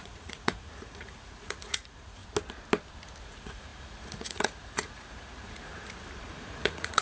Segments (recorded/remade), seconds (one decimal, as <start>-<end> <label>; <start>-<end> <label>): 0.0-2.2 remade; 2.2-3.2 recorded; 3.2-5.7 remade; 5.7-6.2 recorded; 6.2-7.0 remade